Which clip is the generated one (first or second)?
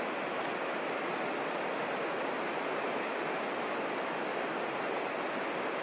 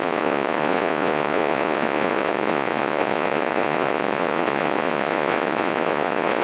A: second